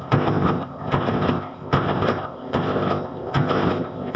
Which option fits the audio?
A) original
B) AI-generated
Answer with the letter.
B